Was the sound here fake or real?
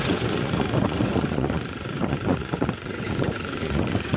fake